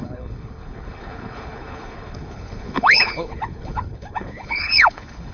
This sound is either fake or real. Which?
fake